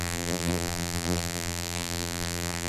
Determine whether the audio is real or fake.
fake